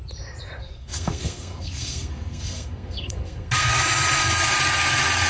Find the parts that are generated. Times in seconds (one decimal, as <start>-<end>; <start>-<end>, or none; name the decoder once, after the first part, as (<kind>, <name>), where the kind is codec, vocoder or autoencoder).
0.6-3.8 (codec, SNAC)